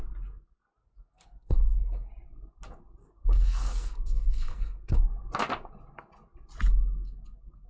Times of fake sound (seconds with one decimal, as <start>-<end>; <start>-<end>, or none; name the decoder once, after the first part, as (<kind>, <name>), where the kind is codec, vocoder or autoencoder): 0.8-2.1 (codec, SNAC); 3.0-5.0